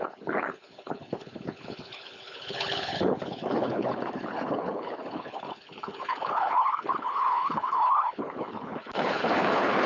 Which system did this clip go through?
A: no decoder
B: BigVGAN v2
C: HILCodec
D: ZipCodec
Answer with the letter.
C